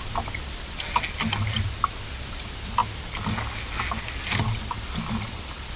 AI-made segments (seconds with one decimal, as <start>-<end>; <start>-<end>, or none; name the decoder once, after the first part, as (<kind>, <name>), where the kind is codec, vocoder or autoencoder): none